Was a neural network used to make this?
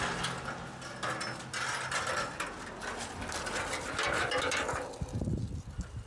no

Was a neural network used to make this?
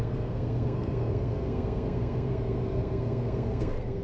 yes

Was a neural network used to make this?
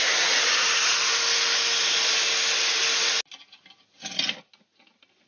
no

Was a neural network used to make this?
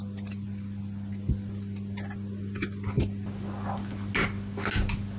no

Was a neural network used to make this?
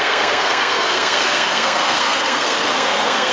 yes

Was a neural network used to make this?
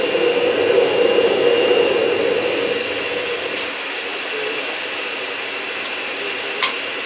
no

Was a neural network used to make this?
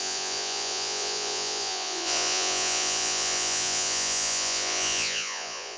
yes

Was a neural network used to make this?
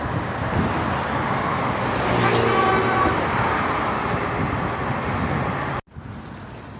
no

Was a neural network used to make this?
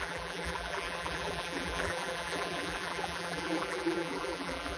yes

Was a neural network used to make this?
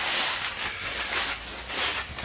no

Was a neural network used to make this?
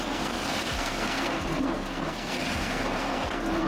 yes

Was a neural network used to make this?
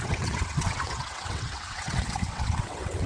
yes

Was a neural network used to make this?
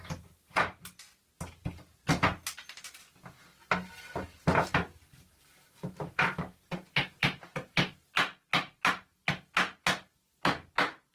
no